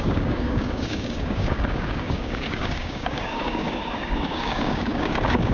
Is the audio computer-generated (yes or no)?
yes